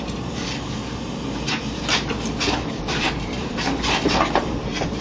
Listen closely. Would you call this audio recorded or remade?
remade